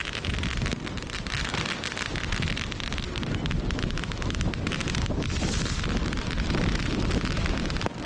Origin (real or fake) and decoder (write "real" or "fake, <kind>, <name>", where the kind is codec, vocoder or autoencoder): real